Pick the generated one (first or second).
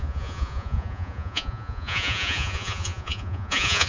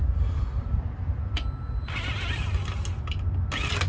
first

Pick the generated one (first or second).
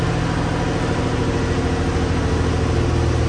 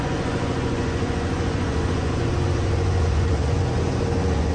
second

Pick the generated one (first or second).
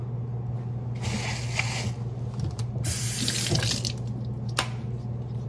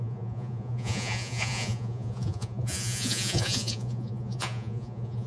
second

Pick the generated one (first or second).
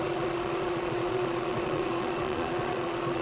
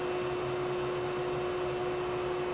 first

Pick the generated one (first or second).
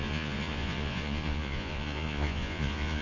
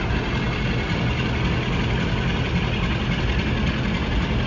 first